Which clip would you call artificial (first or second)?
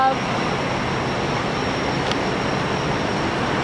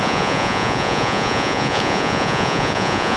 second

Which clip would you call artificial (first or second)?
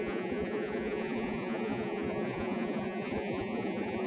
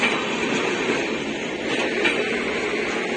first